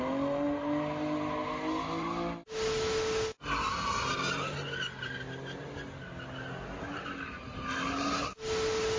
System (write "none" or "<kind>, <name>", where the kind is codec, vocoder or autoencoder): none